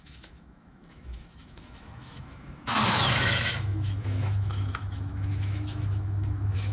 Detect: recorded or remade remade